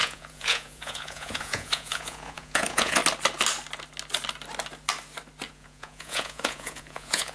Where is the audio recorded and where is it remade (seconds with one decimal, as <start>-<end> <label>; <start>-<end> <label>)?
0.0-3.0 remade; 3.0-5.5 recorded; 5.5-7.3 remade